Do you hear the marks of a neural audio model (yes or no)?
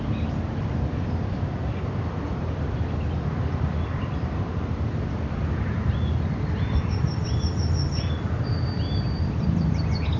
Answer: yes